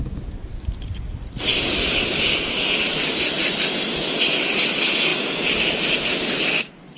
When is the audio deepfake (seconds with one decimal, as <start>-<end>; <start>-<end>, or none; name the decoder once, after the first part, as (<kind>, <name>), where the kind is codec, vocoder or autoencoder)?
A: none